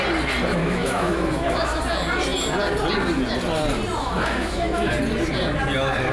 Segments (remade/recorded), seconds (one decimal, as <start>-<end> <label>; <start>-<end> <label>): 0.0-0.6 recorded; 0.6-1.8 remade; 1.8-4.0 recorded; 4.0-4.9 remade; 4.9-6.1 recorded